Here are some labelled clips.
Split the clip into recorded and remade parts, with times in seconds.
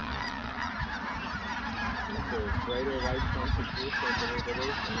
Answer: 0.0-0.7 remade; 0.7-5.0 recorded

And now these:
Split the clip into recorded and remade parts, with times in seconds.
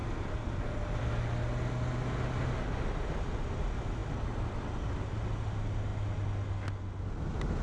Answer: 0.0-7.6 recorded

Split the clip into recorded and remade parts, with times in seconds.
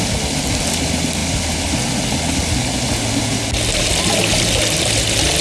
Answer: 0.0-5.4 recorded